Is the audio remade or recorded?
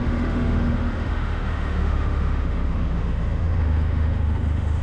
remade